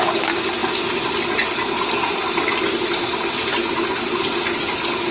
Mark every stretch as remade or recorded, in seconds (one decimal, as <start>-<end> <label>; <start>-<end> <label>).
0.0-5.1 recorded